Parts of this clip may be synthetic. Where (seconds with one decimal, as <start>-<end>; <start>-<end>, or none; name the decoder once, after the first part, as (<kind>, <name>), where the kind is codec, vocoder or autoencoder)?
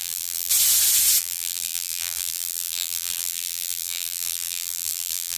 0.0-0.5 (vocoder, BigVGAN v2); 1.2-5.4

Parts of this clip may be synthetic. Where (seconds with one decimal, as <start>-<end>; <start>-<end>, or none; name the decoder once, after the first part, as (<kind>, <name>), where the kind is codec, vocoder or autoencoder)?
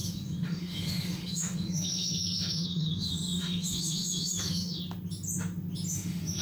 0.0-4.8 (autoencoder, DAC-VAE); 5.9-6.4